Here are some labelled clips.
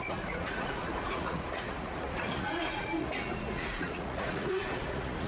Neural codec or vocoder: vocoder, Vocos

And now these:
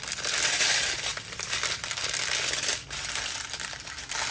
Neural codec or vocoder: none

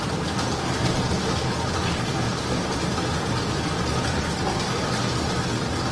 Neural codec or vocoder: none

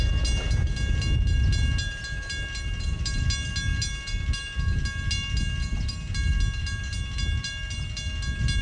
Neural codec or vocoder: none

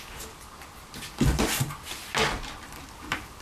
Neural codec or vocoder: none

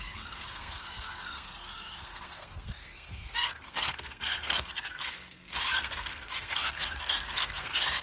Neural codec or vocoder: codec, SNAC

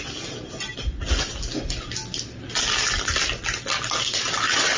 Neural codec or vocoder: none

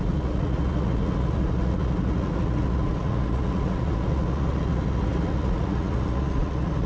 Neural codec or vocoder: vocoder, Vocos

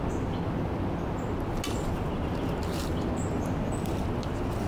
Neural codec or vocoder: none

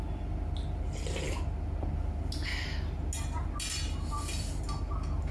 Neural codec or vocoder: none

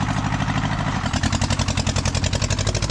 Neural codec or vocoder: none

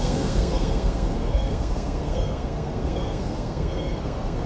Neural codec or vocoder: codec, SNAC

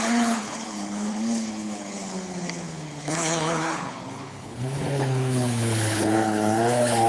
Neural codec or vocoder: codec, HILCodec